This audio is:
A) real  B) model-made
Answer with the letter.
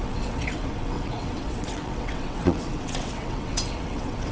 B